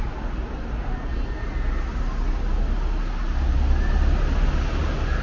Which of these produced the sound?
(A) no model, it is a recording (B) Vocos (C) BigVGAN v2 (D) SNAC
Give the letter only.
A